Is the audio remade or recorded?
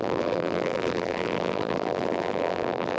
remade